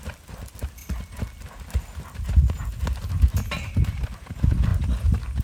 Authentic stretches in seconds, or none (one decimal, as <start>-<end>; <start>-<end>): 0.0-5.4